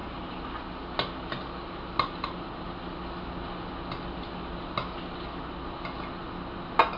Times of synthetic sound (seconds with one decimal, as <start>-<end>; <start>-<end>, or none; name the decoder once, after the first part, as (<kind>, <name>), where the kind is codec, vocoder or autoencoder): none